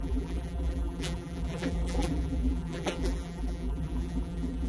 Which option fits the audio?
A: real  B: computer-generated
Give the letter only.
B